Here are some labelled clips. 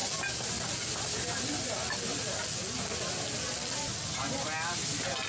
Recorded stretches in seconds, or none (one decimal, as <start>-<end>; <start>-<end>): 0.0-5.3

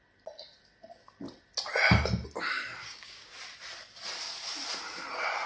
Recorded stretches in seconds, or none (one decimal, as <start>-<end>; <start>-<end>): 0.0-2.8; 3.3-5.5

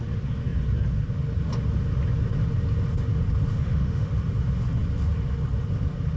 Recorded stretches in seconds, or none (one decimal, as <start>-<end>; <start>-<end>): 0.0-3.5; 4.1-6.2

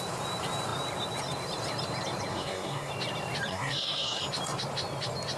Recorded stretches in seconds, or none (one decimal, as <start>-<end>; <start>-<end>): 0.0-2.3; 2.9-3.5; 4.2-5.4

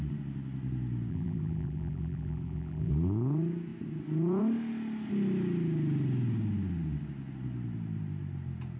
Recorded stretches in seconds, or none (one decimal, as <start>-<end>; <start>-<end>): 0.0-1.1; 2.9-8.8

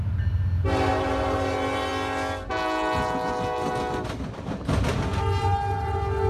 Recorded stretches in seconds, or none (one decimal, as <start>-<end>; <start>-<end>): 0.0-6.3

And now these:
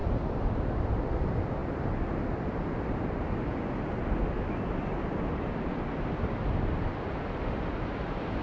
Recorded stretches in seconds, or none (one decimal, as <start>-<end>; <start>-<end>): 0.0-8.4